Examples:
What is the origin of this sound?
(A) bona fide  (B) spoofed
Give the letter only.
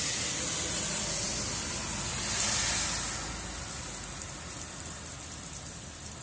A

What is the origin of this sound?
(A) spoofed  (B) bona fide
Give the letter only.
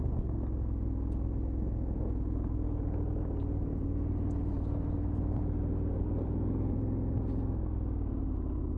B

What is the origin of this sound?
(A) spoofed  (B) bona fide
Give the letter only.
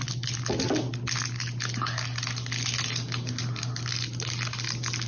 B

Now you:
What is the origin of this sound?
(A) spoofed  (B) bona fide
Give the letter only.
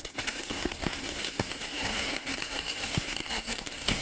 A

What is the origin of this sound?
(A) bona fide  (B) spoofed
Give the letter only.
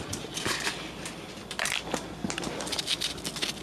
A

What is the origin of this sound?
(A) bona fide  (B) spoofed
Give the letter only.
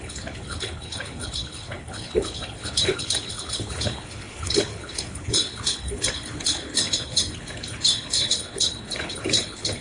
B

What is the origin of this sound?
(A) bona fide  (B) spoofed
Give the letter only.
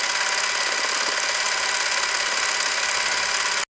A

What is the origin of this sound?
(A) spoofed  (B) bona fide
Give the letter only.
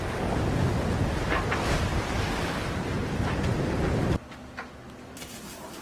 B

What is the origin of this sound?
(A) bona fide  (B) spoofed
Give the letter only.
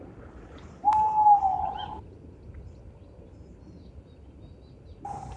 A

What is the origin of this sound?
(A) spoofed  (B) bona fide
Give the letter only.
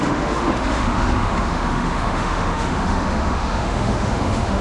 A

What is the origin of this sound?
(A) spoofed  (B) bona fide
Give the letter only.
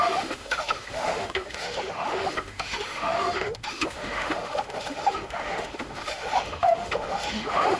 A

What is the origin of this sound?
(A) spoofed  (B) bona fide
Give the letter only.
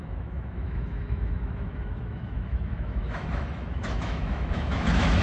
A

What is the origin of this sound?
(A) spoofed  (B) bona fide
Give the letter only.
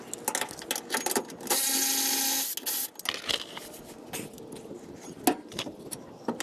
B